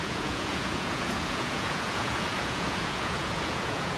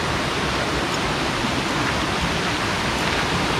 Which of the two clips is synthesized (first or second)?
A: first